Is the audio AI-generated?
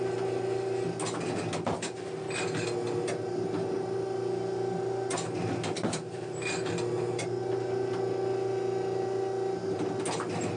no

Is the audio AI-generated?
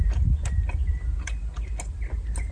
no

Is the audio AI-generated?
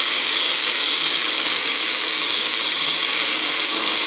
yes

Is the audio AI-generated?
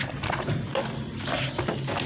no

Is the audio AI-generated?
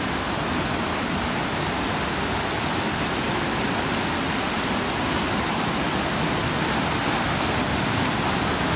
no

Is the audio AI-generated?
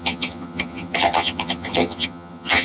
yes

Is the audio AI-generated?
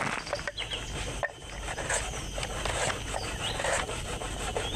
no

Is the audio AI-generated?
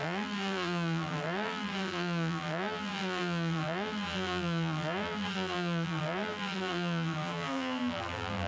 yes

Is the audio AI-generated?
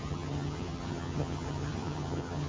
yes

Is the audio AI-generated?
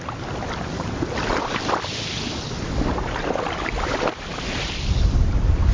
no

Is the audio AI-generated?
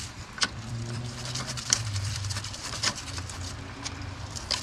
yes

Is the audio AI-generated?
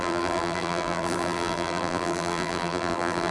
yes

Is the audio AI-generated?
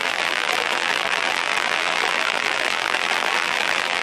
yes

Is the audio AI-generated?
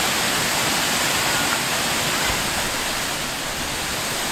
no